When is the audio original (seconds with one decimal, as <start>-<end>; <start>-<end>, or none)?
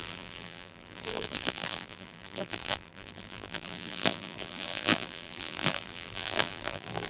none